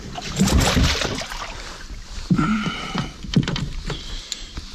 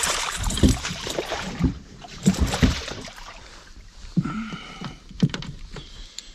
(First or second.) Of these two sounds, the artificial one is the second